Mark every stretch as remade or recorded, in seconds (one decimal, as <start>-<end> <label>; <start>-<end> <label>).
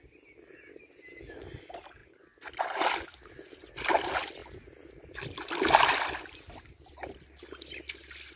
0.0-8.4 recorded